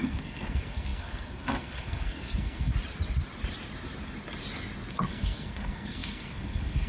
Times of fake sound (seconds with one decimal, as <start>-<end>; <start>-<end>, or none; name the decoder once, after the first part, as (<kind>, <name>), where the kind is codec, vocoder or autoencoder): 0.0-2.7 (codec, SNAC); 4.9-6.9